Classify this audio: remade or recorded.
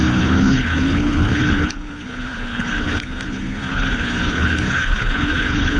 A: remade